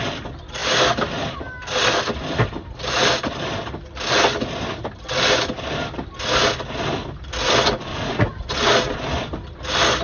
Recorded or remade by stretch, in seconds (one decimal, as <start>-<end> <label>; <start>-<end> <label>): 0.0-7.9 recorded; 7.9-8.5 remade; 8.5-10.0 recorded